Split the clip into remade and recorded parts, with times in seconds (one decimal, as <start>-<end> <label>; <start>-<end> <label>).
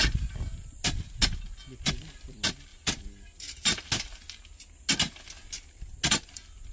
0.0-6.7 recorded